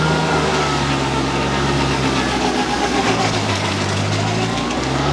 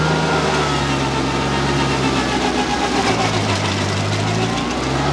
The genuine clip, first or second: second